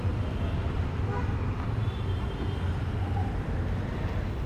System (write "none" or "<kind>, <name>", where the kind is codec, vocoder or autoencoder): none